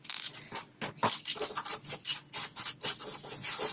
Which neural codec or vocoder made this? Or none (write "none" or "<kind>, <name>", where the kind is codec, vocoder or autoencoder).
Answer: none